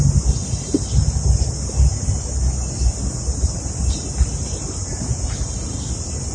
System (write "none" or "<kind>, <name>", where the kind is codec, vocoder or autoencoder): none